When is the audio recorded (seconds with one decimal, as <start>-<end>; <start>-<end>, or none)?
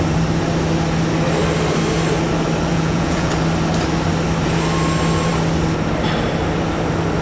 0.0-2.7; 3.3-7.2